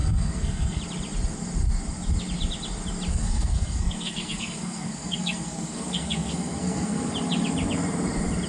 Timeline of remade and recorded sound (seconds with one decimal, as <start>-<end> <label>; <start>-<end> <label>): 0.0-0.8 remade; 0.8-3.1 recorded; 3.1-7.1 remade; 7.1-8.5 recorded